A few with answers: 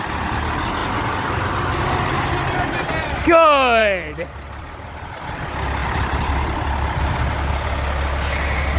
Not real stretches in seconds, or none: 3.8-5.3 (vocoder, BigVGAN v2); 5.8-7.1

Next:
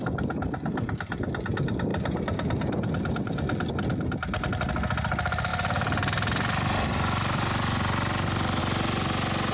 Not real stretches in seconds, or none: none

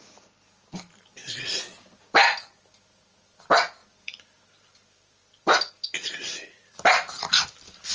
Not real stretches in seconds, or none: 3.8-7.9 (vocoder, BigVGAN v2)

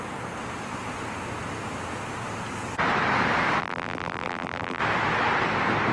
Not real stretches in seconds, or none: 3.6-4.8 (vocoder, BigVGAN v2)

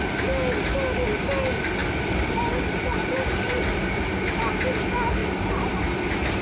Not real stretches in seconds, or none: 1.8-4.0 (vocoder, BigVGAN v2); 5.2-5.8

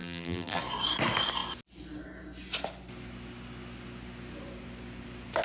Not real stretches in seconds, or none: 0.0-0.6 (vocoder, BigVGAN v2)